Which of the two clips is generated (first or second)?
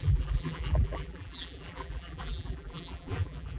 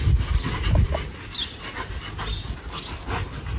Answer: first